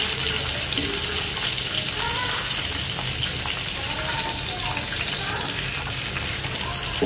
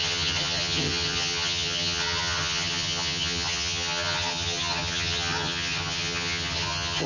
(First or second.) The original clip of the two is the first